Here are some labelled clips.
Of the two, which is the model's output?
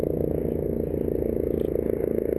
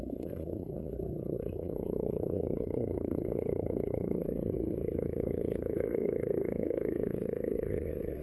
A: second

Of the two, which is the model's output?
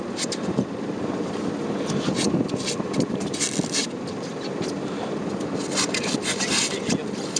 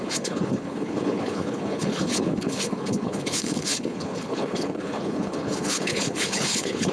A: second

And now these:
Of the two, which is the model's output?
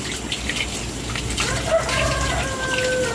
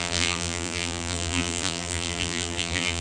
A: second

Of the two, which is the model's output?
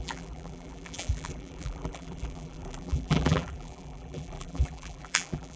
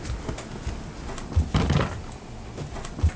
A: first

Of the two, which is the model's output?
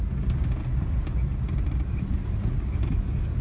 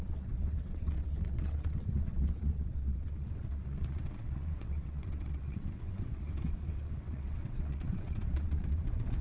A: second